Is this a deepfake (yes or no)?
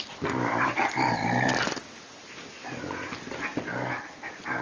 no